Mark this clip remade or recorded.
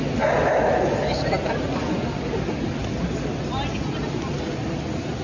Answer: recorded